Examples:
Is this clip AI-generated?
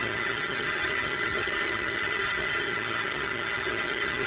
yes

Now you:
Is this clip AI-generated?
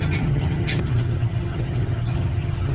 yes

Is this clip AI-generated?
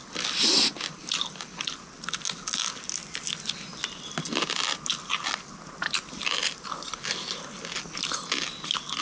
no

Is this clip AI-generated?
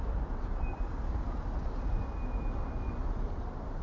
no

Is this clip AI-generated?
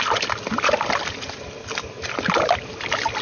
no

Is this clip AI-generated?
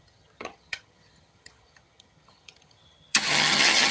yes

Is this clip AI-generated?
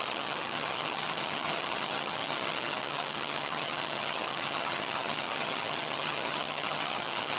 yes